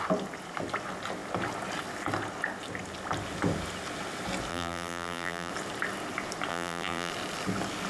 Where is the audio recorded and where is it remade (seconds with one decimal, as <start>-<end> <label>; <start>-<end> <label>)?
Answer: 0.0-4.5 recorded; 4.5-5.5 remade; 5.5-6.5 recorded; 6.5-7.1 remade; 7.1-7.9 recorded